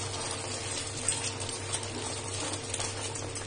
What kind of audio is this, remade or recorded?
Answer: recorded